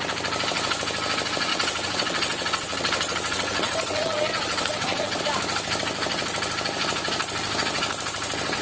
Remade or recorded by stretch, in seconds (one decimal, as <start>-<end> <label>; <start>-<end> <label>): 0.0-1.5 recorded; 1.5-5.2 remade; 5.2-8.6 recorded